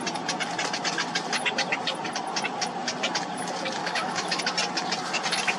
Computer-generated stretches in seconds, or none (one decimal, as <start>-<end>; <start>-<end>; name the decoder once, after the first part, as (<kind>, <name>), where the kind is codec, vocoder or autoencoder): 3.8-4.4 (autoencoder, DAC-VAE)